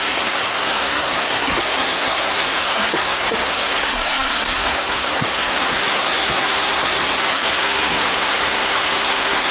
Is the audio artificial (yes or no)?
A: yes